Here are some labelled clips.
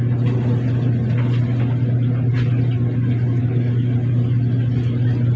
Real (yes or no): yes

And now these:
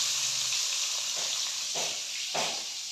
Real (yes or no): yes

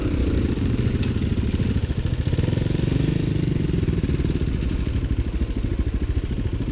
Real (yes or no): yes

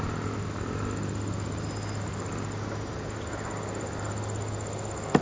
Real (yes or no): yes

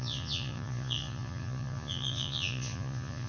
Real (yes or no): no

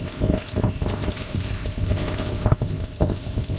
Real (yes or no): no